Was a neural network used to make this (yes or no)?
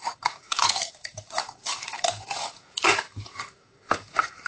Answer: yes